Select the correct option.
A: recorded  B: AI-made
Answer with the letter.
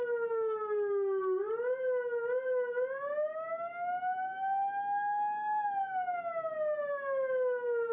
A